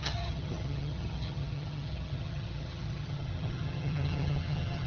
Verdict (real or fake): fake